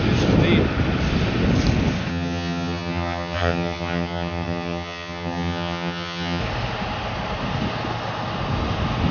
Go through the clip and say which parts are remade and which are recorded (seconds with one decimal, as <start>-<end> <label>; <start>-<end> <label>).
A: 0.0-2.1 recorded; 2.1-6.4 remade; 6.4-9.1 recorded